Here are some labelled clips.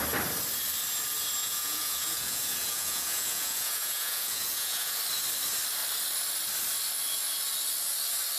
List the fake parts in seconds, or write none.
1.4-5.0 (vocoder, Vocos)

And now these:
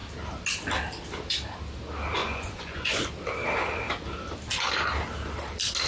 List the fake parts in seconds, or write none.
2.2-3.0 (vocoder, Vocos)